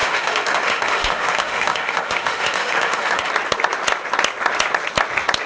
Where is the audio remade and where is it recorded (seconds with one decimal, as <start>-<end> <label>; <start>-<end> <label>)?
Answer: 0.0-3.3 remade; 3.3-5.5 recorded